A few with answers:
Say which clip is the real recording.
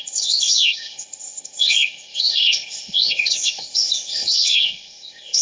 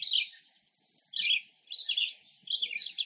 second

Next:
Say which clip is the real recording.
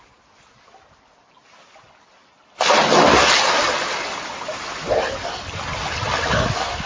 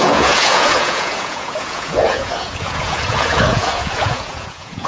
first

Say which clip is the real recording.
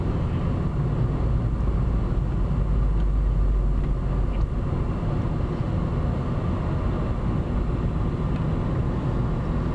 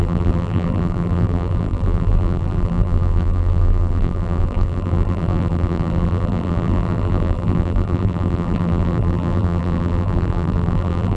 first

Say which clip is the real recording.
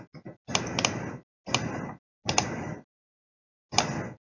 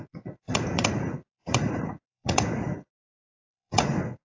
first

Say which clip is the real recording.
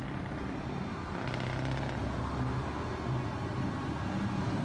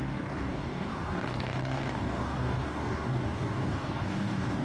first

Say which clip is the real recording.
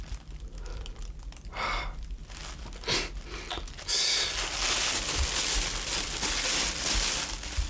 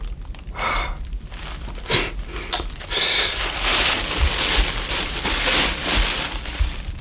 first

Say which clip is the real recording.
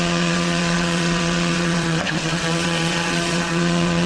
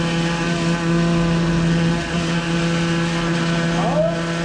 second